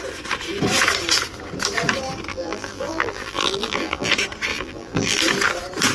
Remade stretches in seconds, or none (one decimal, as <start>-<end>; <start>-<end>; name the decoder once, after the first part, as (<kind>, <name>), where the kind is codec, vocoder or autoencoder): 2.3-4.1 (vocoder, BigVGAN v2); 4.5-5.2